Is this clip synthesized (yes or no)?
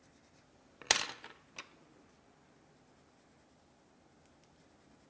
no